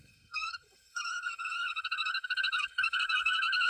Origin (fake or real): fake